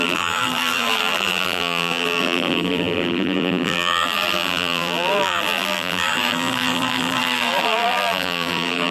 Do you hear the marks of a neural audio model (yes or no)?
yes